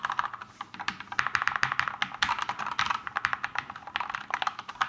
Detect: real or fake real